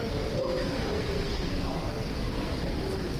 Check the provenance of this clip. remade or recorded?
remade